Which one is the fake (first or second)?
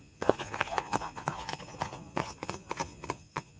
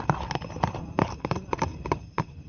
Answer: first